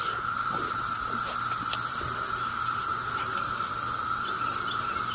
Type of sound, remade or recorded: recorded